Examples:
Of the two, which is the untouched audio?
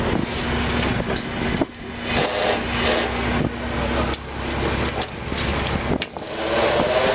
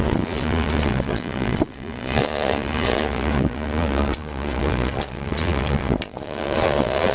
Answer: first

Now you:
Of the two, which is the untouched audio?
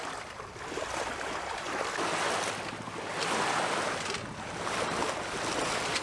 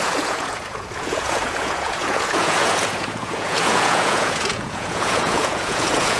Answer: first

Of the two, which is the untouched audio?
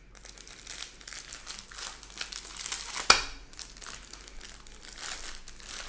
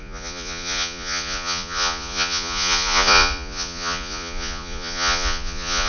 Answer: first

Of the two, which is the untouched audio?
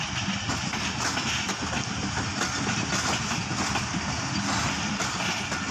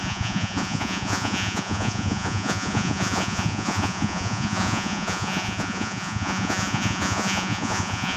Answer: first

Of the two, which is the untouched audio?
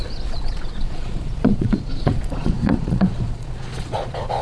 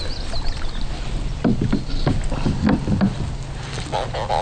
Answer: second